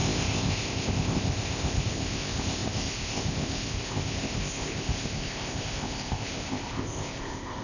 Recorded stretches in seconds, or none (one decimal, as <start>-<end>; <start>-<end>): none